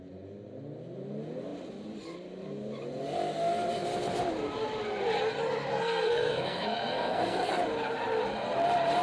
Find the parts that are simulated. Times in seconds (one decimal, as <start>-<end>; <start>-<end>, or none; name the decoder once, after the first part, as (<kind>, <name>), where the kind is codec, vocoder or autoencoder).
5.7-7.6 (codec, SNAC)